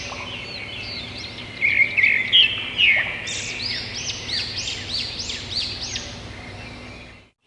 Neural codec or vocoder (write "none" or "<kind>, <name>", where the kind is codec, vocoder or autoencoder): none